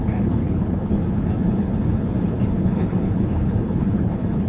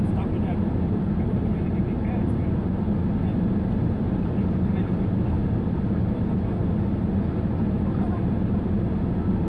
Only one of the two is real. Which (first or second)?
second